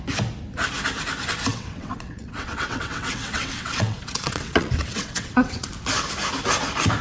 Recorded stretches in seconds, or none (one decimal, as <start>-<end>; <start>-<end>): 0.0-1.5; 5.7-7.0